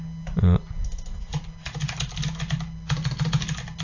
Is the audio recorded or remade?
recorded